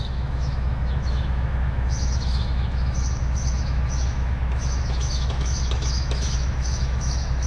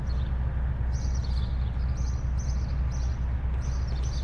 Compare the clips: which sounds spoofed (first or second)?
first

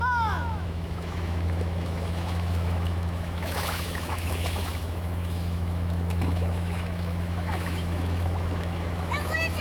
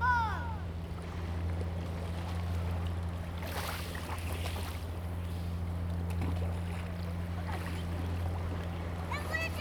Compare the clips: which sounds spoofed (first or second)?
first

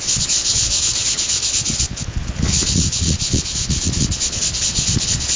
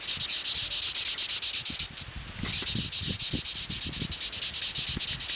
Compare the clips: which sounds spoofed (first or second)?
first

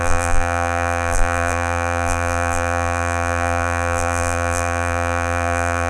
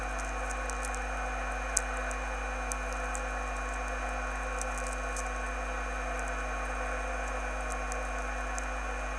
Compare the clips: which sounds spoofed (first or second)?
first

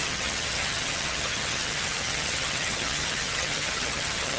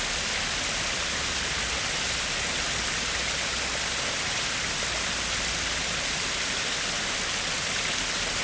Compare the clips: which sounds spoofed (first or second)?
first